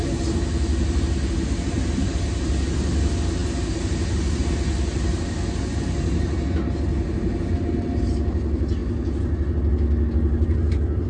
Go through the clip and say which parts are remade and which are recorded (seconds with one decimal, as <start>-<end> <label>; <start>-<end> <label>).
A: 0.0-11.1 recorded

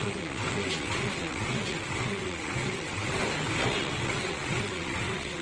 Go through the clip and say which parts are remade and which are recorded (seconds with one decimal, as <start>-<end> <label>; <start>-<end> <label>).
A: 0.0-3.2 remade; 3.2-3.6 recorded; 3.6-5.4 remade

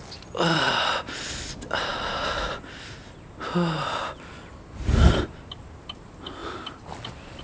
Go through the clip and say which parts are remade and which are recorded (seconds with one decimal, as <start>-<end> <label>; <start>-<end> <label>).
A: 0.0-7.4 recorded

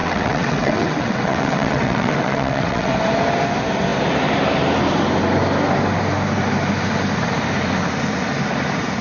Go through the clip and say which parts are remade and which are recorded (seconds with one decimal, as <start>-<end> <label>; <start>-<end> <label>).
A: 0.0-2.9 remade; 2.9-9.0 recorded

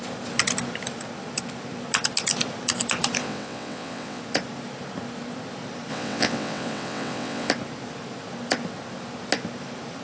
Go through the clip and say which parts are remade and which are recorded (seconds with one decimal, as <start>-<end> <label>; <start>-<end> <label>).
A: 0.0-3.2 recorded; 3.2-4.2 remade; 4.2-5.9 recorded; 5.9-7.5 remade; 7.5-10.0 recorded

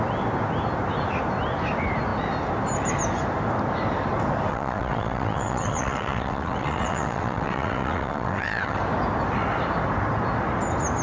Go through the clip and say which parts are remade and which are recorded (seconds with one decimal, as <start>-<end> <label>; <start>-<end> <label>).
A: 0.0-4.5 recorded; 4.5-8.8 remade; 8.8-11.0 recorded